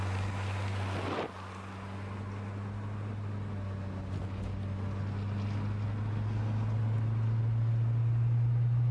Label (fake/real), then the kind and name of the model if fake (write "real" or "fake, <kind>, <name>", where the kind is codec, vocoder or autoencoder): real